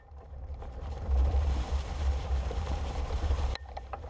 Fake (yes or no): yes